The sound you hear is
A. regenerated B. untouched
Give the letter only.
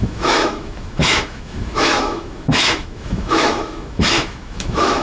A